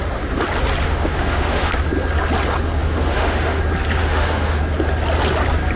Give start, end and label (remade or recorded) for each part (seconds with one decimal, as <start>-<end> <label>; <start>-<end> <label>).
0.0-0.8 recorded; 0.8-1.7 remade; 1.7-2.8 recorded; 2.8-3.6 remade; 3.6-4.0 recorded; 4.0-4.6 remade; 4.6-5.8 recorded